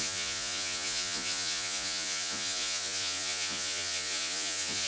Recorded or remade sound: remade